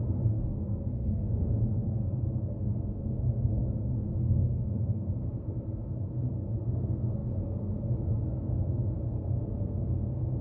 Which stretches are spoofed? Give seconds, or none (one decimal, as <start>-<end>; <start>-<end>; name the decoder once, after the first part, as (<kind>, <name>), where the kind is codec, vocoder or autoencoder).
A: 0.0-10.4 (codec, SNAC)